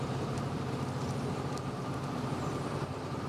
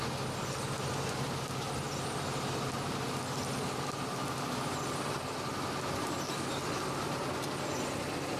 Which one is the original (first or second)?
second